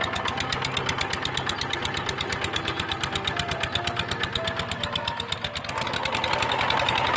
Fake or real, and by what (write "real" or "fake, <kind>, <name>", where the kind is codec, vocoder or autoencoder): real